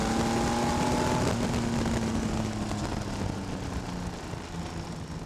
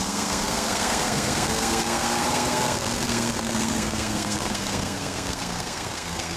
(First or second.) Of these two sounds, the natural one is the first